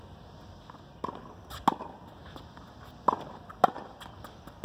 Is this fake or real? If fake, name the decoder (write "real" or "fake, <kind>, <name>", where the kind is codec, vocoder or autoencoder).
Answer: real